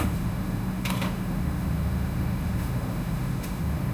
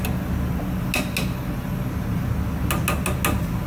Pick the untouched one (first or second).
second